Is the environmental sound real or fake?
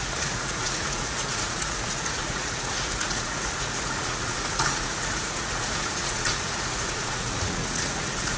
fake